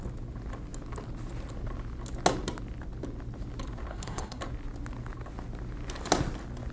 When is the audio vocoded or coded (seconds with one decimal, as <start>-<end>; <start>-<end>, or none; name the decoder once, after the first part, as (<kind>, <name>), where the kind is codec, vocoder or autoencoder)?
3.9-4.4 (codec, SNAC)